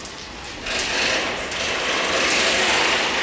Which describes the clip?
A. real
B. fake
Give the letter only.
A